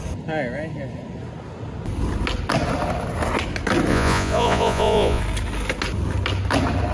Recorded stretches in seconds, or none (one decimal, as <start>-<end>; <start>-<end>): 0.0-3.9; 5.2-6.9